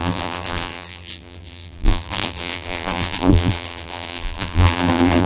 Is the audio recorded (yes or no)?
no